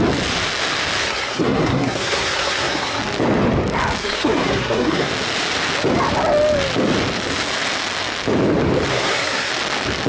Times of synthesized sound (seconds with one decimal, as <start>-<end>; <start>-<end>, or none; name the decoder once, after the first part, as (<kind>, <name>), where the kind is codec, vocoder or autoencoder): 1.0-3.0 (codec, SNAC); 4.0-5.1; 8.9-9.5